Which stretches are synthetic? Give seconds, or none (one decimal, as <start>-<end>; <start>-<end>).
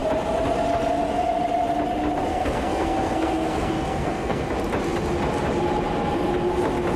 2.3-4.4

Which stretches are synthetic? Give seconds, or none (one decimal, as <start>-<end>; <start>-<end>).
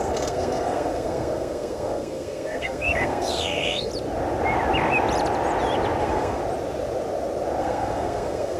0.0-3.9; 6.0-6.4; 7.6-8.6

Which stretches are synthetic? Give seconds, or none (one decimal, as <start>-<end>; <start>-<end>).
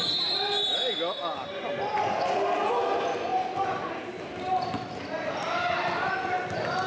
none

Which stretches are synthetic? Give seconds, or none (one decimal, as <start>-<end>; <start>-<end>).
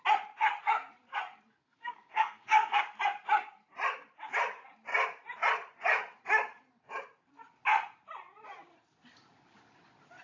1.6-2.8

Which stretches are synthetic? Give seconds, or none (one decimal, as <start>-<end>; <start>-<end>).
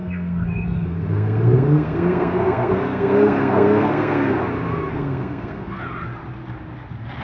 0.0-4.3; 4.9-5.8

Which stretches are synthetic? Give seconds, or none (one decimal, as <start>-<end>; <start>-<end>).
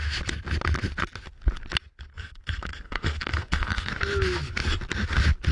2.1-3.9